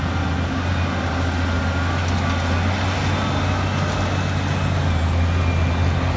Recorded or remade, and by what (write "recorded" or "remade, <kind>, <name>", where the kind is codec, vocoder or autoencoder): recorded